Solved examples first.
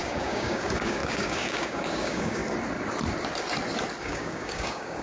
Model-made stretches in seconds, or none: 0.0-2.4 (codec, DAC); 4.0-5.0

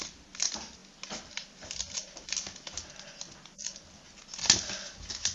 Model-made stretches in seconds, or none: none

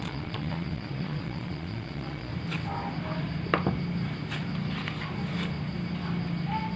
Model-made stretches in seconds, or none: 0.0-2.3 (vocoder, Vocos)